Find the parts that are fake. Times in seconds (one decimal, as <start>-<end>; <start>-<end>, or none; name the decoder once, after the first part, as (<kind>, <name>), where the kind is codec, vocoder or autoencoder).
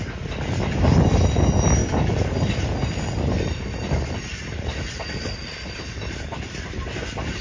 1.8-2.3 (vocoder, BigVGAN v2); 2.8-7.4